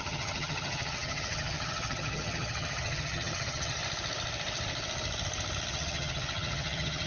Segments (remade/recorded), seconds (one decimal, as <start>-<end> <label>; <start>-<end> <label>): 0.0-3.8 remade; 3.8-5.7 recorded; 5.7-7.1 remade